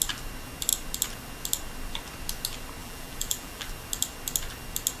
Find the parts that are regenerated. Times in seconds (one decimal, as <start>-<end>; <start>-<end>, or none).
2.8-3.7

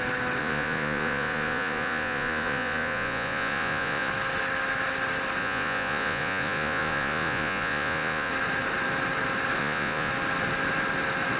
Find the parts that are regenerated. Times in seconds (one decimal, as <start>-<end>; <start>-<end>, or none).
0.4-4.1; 5.4-8.3; 9.6-10.1

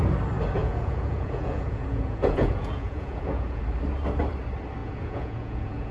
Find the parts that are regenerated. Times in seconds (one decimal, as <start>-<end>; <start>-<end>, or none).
0.6-3.6; 4.8-5.9

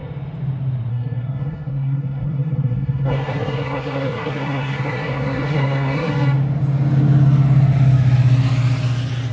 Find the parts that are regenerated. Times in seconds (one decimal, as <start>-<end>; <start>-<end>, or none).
0.9-6.1

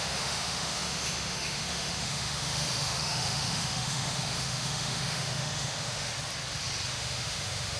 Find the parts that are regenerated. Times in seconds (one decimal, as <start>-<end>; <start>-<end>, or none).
0.0-6.1; 6.9-7.8

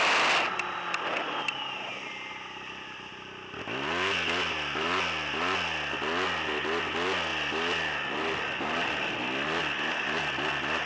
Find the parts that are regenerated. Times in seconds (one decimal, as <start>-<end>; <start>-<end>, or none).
none